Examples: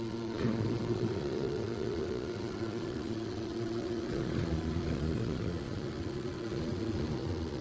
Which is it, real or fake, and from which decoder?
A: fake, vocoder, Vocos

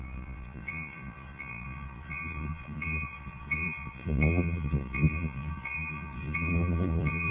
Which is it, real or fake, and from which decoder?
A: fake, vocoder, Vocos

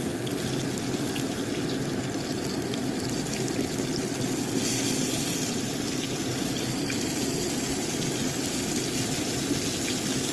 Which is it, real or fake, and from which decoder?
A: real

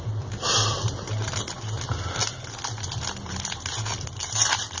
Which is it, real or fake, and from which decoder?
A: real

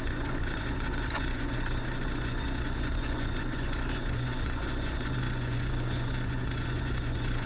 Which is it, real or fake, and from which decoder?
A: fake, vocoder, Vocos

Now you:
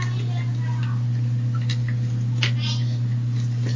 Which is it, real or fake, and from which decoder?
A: real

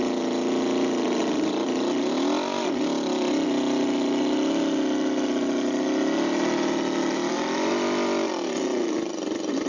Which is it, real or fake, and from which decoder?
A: real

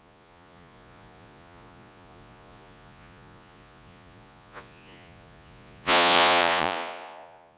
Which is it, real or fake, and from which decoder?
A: fake, vocoder, Vocos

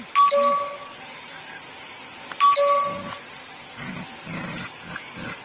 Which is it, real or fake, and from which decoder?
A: real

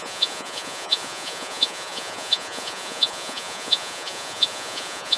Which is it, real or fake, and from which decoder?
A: fake, vocoder, Vocos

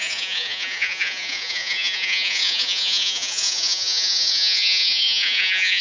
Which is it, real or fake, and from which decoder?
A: fake, vocoder, Vocos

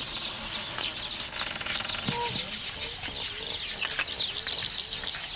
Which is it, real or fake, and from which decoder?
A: real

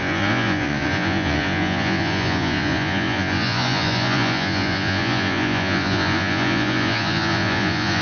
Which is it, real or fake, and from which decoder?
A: fake, vocoder, Vocos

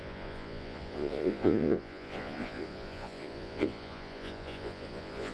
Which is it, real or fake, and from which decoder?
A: fake, vocoder, Vocos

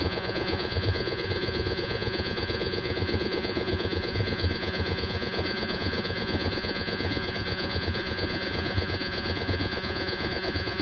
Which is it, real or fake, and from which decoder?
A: fake, vocoder, Vocos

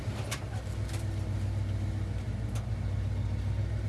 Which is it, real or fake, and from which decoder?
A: real